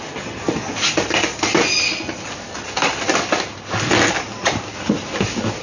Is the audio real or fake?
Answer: real